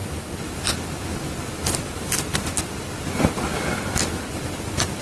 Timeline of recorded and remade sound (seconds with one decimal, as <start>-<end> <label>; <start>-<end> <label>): 0.0-5.0 recorded